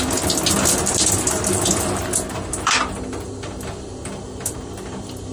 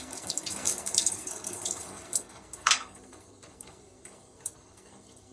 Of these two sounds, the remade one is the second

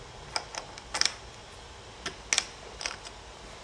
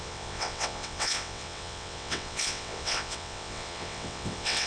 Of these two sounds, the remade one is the second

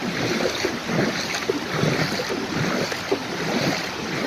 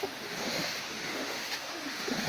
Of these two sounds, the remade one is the second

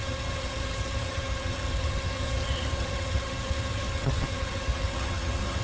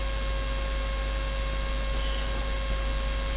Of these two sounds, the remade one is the first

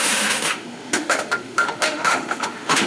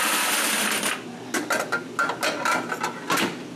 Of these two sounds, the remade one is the first